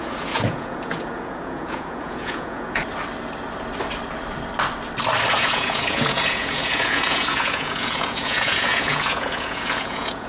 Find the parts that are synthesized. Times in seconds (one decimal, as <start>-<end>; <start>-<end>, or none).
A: 0.0-2.8; 5.3-10.3

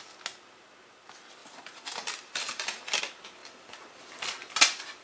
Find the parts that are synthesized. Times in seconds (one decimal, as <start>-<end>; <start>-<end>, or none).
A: 1.4-3.0; 3.4-4.0

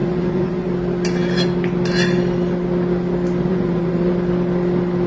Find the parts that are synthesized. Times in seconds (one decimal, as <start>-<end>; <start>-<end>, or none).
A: 0.0-0.7; 3.5-4.1